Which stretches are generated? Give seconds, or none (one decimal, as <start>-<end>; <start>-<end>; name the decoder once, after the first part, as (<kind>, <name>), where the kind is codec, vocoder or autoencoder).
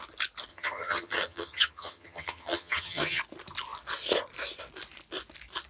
0.5-3.2 (vocoder, HiFi-GAN)